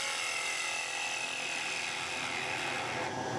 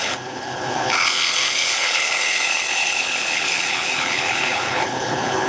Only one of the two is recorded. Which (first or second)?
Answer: first